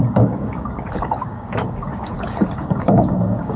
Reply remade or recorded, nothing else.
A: remade